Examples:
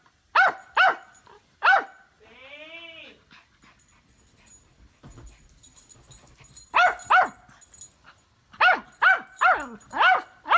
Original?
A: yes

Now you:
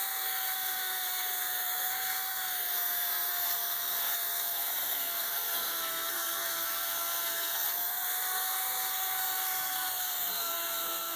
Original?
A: no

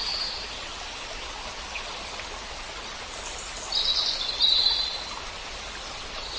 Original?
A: yes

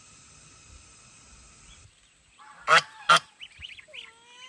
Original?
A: yes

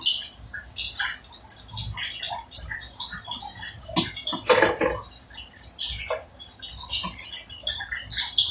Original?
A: yes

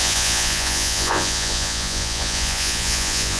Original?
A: no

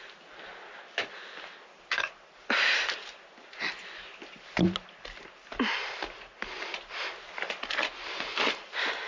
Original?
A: yes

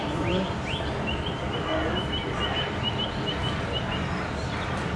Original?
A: yes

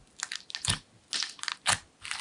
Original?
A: yes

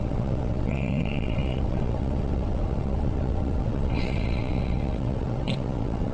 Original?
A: no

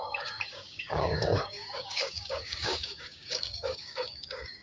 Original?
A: no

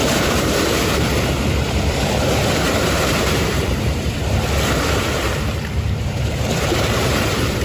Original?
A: no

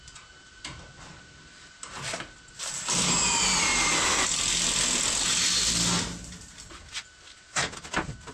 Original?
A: yes